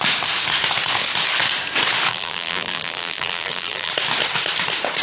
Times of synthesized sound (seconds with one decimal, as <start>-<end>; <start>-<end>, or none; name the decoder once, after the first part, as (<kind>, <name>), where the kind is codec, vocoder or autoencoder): 2.1-3.9 (vocoder, BigVGAN v2)